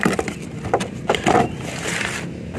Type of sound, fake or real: real